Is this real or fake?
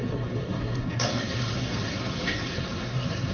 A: fake